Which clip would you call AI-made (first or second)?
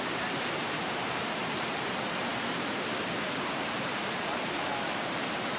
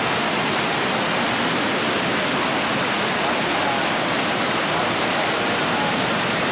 first